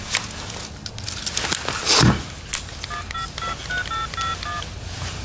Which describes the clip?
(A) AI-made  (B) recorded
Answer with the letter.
B